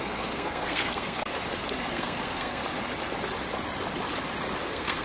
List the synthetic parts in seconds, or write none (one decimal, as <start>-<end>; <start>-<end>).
0.0-1.2; 1.9-2.6; 4.6-5.0